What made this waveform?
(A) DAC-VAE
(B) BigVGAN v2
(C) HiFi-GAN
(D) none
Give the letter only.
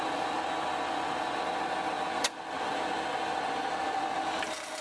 D